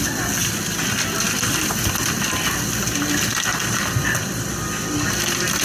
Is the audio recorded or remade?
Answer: recorded